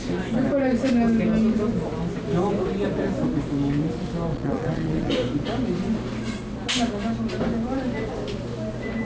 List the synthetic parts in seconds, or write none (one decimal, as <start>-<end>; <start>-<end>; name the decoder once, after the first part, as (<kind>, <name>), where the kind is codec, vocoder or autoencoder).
4.3-5.1 (vocoder, Vocos)